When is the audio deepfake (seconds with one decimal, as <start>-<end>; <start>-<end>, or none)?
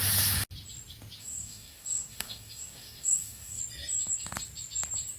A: 1.2-3.6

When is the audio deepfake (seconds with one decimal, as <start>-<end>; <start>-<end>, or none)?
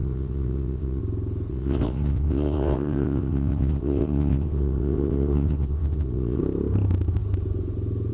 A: 0.0-1.0; 1.5-6.4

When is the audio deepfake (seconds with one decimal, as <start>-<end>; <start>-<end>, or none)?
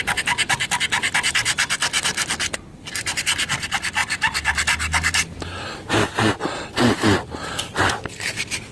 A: 4.0-8.7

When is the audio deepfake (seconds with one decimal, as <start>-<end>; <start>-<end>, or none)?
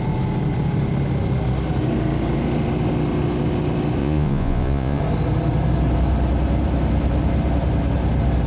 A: 4.0-5.0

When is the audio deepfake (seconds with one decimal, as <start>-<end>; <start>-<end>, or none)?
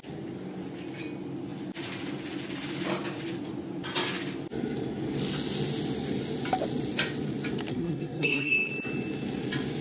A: 7.7-8.7